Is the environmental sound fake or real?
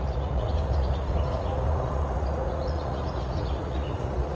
fake